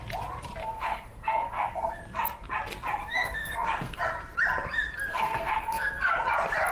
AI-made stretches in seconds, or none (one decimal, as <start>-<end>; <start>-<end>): 0.6-2.0; 3.0-4.0; 5.1-6.1